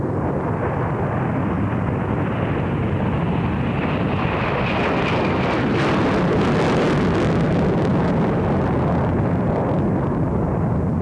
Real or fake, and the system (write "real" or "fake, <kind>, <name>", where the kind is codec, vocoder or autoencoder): real